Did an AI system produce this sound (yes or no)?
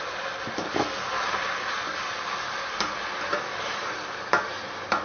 no